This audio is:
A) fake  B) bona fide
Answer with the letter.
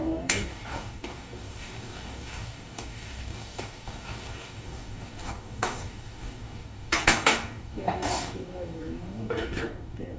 A